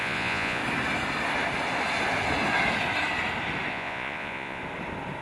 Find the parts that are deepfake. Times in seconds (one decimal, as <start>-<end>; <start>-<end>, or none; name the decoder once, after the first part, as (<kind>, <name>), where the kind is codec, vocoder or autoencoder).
0.0-0.6 (vocoder, Vocos); 3.7-4.6